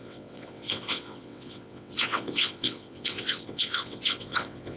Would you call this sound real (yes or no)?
no